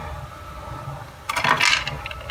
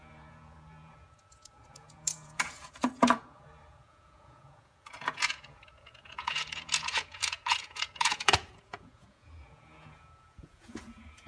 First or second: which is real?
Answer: first